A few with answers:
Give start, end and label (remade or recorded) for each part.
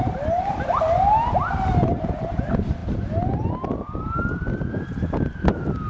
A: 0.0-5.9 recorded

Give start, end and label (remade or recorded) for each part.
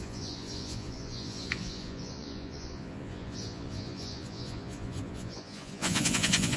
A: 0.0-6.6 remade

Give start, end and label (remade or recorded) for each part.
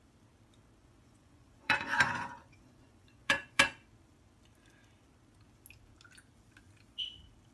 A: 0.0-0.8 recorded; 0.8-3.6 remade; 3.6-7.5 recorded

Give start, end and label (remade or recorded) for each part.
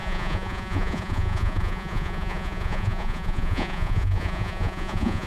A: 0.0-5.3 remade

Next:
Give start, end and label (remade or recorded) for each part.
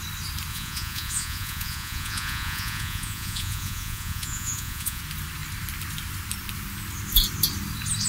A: 0.0-0.5 recorded; 0.5-5.0 remade; 5.0-8.1 recorded